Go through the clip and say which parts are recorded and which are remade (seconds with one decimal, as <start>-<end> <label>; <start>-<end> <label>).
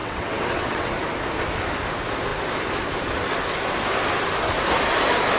0.0-0.9 remade; 0.9-5.4 recorded